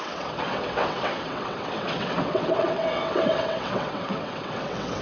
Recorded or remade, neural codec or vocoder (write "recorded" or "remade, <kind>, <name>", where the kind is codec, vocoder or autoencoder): remade, vocoder, WaveNeXt